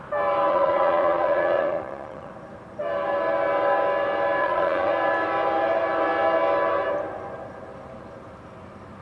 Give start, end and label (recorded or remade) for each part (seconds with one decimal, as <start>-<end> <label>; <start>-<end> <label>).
0.0-0.5 recorded; 0.5-2.3 remade; 2.3-4.4 recorded; 4.4-4.9 remade; 4.9-9.0 recorded